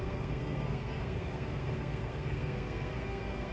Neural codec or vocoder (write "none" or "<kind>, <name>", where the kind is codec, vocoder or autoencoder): codec, SNAC